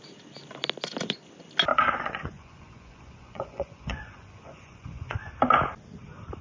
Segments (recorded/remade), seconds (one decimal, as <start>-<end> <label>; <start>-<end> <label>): 0.0-1.7 recorded; 1.7-5.3 remade; 5.3-6.4 recorded